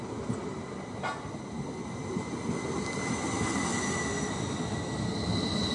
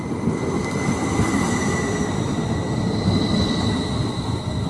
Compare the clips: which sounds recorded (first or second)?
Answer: first